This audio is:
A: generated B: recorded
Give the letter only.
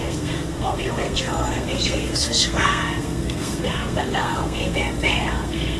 A